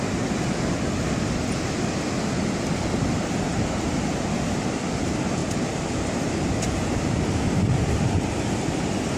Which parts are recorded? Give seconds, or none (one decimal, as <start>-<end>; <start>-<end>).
0.0-5.4; 6.0-9.2